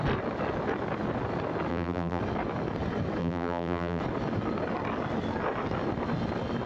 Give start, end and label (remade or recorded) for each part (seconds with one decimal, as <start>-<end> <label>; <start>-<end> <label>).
0.0-1.7 recorded; 1.7-2.2 remade; 2.2-3.2 recorded; 3.2-4.0 remade; 4.0-6.7 recorded